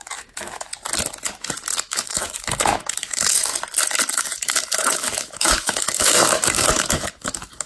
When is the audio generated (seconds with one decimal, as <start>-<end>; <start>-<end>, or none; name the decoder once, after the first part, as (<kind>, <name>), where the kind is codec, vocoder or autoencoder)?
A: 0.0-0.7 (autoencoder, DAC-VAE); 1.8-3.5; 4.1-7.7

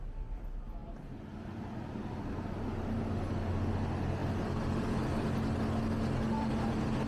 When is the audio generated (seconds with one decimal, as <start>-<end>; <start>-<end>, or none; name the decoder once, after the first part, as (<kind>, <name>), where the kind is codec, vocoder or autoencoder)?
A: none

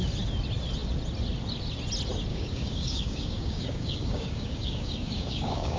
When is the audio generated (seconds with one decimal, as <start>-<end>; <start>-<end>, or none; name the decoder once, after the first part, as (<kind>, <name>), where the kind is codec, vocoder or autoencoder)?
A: 2.3-5.8 (codec, DAC)